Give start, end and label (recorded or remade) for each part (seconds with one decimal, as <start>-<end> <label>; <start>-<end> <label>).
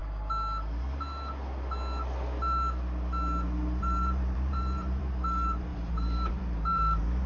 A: 0.0-3.8 recorded; 3.8-7.3 remade